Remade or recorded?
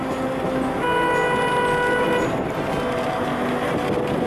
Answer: recorded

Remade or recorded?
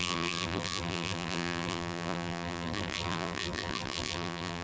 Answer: remade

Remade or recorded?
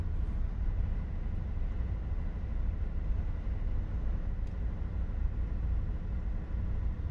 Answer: recorded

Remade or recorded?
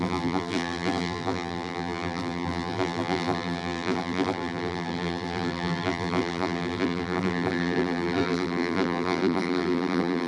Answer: remade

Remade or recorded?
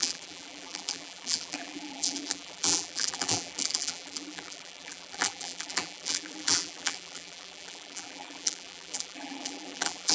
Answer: remade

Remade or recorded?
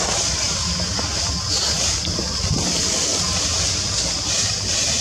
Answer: recorded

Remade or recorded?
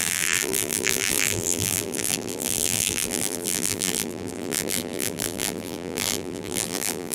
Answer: remade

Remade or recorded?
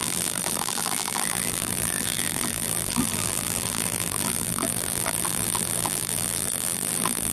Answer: remade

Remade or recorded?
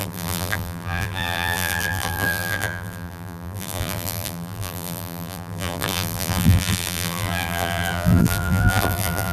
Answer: remade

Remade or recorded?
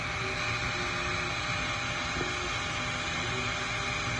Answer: recorded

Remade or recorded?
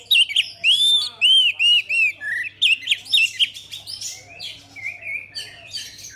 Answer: recorded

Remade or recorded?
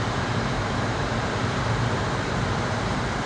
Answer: remade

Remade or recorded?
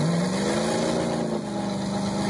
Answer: recorded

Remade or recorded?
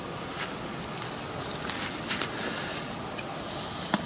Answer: recorded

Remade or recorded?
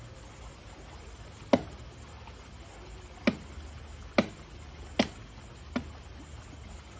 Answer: recorded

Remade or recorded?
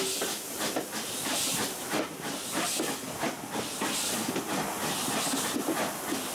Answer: recorded